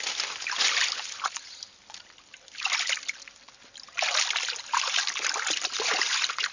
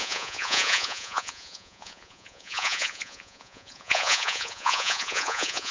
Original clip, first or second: first